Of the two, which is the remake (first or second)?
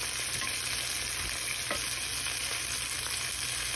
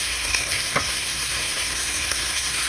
second